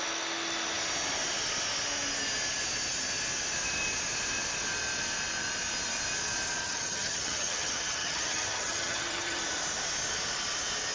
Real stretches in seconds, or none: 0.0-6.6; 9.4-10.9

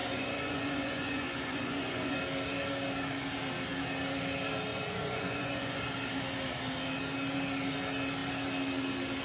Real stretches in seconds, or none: 2.2-4.7; 5.8-9.2

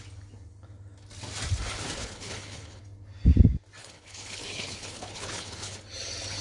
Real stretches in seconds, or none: 0.0-2.0; 2.8-3.8; 5.8-6.4